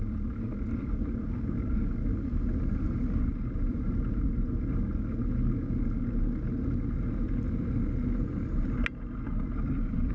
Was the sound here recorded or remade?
recorded